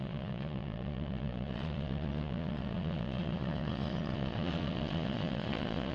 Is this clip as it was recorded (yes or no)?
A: no